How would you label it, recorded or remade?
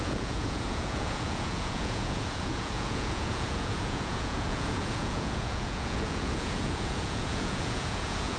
remade